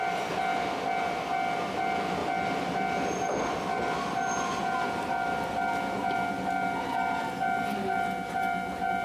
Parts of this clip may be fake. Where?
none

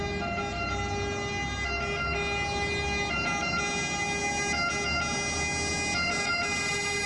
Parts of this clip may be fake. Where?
none

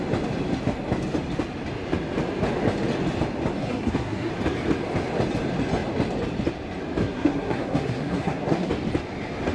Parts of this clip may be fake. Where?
3.6-4.3 (codec, SNAC); 7.0-8.7

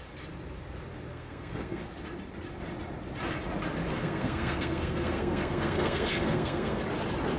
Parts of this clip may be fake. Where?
1.1-1.8 (codec, SNAC); 3.9-6.8

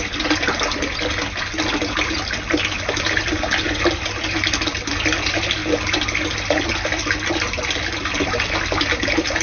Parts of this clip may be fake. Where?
none

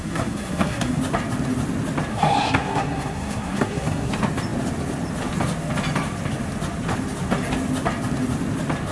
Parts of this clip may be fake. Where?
0.0-1.0 (codec, SNAC); 2.1-4.1

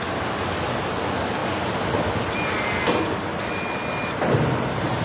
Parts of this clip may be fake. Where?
none

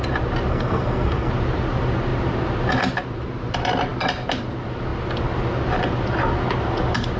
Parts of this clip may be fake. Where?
0.5-1.3 (codec, SNAC)